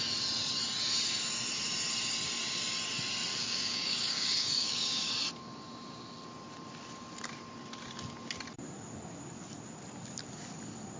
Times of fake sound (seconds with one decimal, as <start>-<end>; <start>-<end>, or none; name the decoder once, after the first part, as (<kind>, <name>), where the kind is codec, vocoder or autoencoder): 3.3-5.1 (codec, DAC)